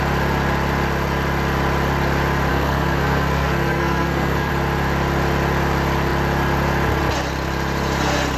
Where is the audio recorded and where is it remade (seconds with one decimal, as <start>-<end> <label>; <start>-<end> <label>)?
0.0-2.5 recorded; 2.5-4.5 remade; 4.5-8.4 recorded